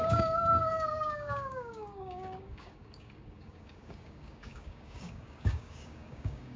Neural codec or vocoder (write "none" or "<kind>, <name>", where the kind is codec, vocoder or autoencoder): codec, DAC